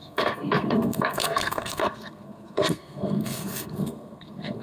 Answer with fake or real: fake